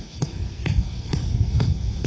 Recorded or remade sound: remade